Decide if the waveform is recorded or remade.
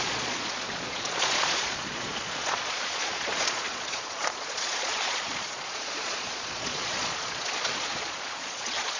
remade